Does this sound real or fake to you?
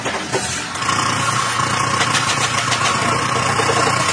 real